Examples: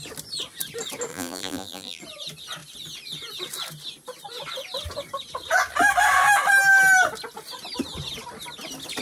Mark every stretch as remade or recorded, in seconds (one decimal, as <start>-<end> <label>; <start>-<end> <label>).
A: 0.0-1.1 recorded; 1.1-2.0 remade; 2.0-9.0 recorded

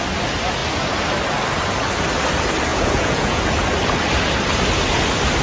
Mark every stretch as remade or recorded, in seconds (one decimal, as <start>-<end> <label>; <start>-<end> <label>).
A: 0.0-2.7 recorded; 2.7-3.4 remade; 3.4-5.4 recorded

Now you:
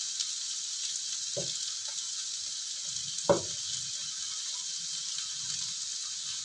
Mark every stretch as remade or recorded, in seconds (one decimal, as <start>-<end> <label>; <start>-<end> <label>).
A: 0.0-6.4 recorded